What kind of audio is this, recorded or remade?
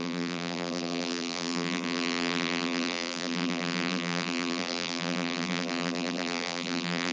remade